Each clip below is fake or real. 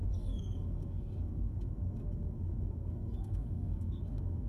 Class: fake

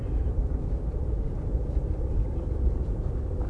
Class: fake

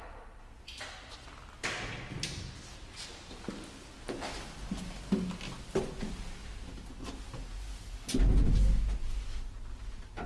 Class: real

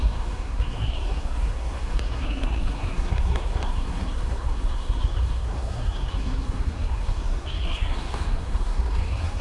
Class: fake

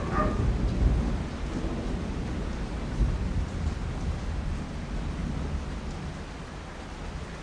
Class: real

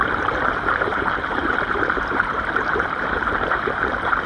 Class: fake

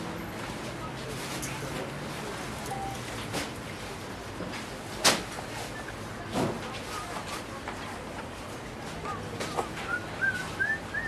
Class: real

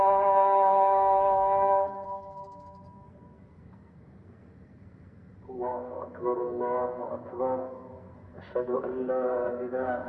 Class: fake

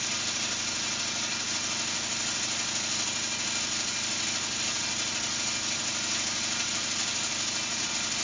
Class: real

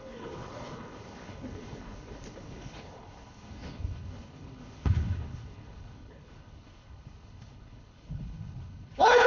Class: fake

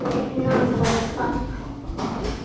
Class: real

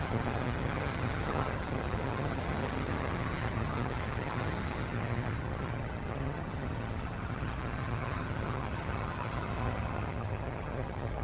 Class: fake